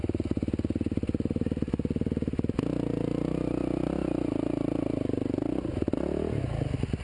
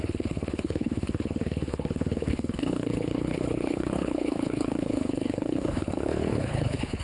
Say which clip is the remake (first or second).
second